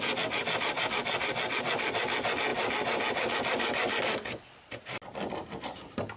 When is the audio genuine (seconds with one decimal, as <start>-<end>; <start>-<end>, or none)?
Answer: 0.0-6.2